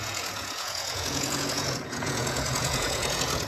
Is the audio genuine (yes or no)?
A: no